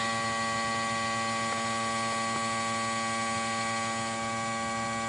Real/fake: real